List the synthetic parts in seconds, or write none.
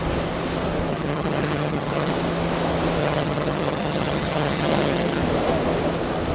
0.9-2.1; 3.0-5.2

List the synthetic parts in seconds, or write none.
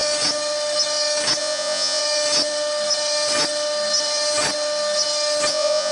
1.4-2.0; 5.5-5.9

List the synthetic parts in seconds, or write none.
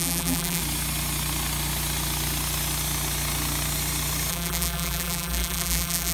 0.0-0.6; 4.3-6.1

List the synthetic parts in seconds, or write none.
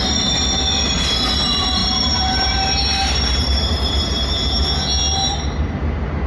1.8-4.3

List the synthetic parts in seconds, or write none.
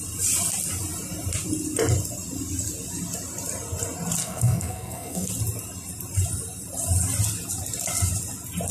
4.2-5.3